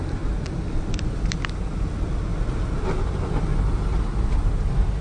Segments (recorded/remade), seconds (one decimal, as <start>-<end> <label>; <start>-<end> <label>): 0.0-5.0 recorded

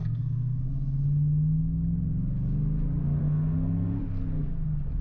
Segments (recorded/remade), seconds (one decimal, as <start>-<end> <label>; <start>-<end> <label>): 0.0-0.7 remade; 0.7-3.2 recorded; 3.2-4.0 remade; 4.0-5.0 recorded